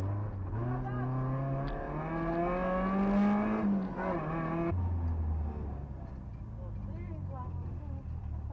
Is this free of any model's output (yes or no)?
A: yes